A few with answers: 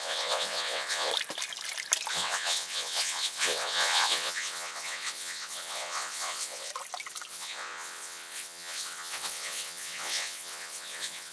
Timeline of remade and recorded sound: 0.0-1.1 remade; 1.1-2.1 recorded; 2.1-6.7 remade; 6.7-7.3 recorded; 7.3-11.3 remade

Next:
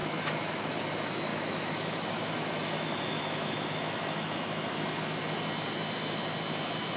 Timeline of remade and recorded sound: 0.0-0.7 remade; 0.7-1.3 recorded; 1.3-4.7 remade; 4.7-7.0 recorded

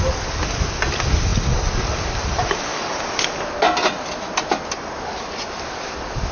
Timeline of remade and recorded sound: 0.0-6.3 recorded